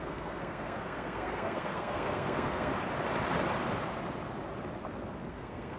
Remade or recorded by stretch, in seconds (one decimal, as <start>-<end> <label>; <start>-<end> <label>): 0.0-2.7 remade; 2.7-5.3 recorded; 5.3-5.8 remade